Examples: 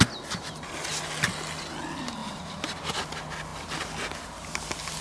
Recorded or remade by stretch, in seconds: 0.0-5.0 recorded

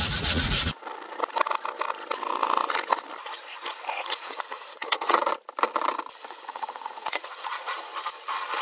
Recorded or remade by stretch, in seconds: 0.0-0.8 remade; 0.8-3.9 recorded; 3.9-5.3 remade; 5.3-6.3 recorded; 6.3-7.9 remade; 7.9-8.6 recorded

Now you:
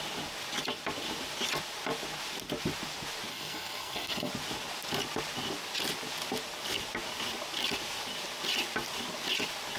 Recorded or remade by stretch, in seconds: 0.0-3.3 recorded; 3.3-4.3 remade; 4.3-9.8 recorded